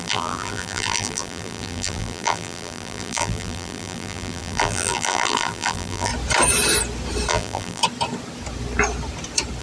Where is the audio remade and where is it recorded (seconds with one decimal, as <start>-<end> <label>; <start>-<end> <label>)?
0.0-6.1 remade; 6.1-7.3 recorded; 7.3-7.8 remade; 7.8-9.6 recorded